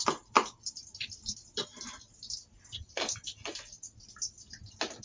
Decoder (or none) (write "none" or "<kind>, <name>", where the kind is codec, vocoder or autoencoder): none